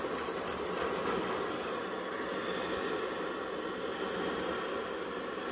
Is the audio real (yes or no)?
yes